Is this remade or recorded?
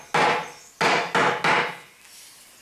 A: recorded